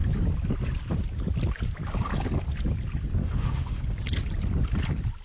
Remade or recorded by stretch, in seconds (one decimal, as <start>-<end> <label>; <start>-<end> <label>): 0.0-3.2 recorded; 3.2-3.8 remade; 3.8-5.2 recorded